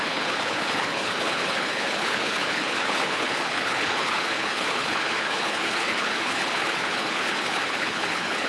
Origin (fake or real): fake